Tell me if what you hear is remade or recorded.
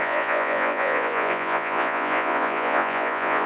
remade